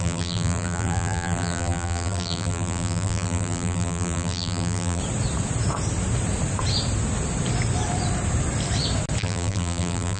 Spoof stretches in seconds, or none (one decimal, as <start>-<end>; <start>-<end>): 0.0-5.0; 9.2-10.2